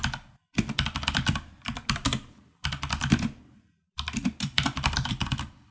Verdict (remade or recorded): remade